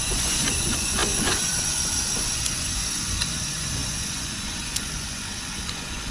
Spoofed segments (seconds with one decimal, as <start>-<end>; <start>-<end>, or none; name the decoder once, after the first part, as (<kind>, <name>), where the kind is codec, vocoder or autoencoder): 0.0-6.1 (vocoder, Vocos)